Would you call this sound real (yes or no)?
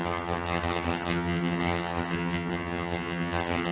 no